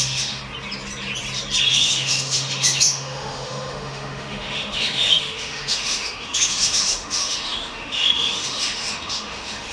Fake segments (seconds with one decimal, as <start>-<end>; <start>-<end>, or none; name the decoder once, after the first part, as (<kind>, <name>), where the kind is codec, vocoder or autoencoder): 0.0-0.4 (autoencoder, DAC-VAE); 1.7-9.7